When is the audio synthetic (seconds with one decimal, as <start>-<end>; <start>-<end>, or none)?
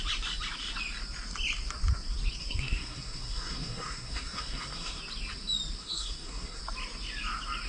2.4-5.0; 5.8-6.6